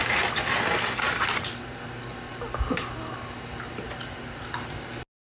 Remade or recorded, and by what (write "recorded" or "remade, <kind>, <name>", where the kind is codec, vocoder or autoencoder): recorded